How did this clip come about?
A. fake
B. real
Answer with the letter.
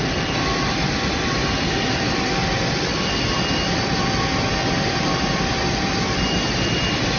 A